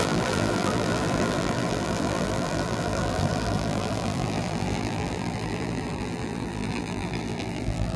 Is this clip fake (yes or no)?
yes